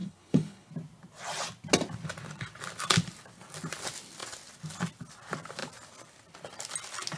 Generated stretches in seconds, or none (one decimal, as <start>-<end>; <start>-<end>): 0.0-0.7